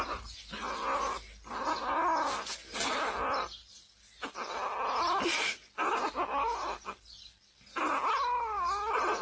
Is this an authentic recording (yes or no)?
yes